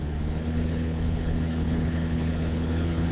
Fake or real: fake